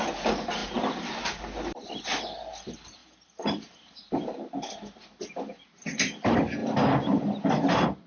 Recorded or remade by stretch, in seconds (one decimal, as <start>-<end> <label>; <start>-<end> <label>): 0.0-0.6 recorded; 0.6-1.4 remade; 1.4-3.0 recorded; 3.0-4.0 remade; 4.0-8.1 recorded